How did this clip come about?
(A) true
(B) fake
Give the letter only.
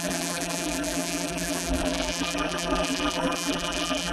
B